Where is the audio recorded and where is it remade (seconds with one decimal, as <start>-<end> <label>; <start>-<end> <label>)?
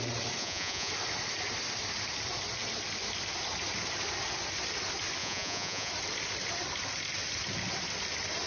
0.0-0.4 recorded; 0.4-0.9 remade; 0.9-5.2 recorded; 5.2-5.9 remade; 5.9-8.5 recorded